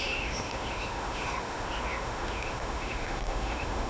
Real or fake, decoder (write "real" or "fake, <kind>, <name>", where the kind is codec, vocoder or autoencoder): fake, autoencoder, DAC-VAE